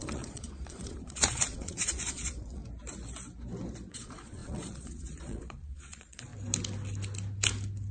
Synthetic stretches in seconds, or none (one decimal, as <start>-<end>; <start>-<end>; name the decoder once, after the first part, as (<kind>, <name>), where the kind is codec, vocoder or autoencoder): 0.0-2.6 (vocoder, Vocos); 3.9-6.3